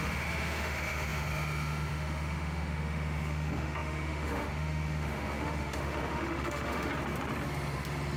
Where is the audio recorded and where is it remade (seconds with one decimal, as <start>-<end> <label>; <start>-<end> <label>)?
0.0-6.9 remade; 6.9-8.2 recorded